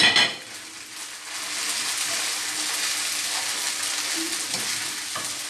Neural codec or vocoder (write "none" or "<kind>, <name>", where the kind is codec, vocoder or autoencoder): none